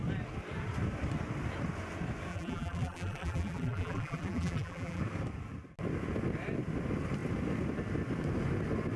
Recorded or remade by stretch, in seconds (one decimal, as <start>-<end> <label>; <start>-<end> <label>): 0.0-2.3 recorded; 2.3-5.0 remade; 5.0-9.0 recorded